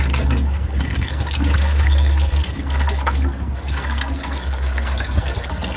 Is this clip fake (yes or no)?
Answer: yes